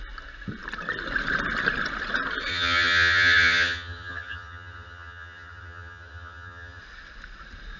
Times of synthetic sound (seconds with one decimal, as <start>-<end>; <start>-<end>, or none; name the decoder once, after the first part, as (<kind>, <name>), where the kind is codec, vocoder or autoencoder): 2.5-6.8 (vocoder, HiFi-GAN)